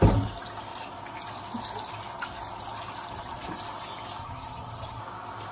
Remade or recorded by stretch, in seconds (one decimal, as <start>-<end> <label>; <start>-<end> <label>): 0.0-4.2 recorded; 4.2-5.0 remade; 5.0-5.5 recorded